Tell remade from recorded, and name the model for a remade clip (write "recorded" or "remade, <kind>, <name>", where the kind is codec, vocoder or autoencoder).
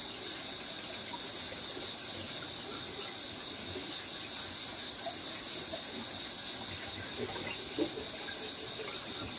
recorded